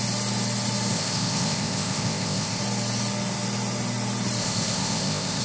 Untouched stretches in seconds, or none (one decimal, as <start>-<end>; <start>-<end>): 0.0-0.9; 2.6-4.4